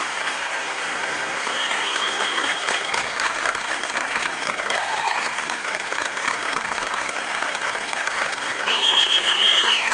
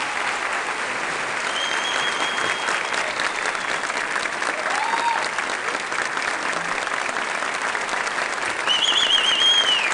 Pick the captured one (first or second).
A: second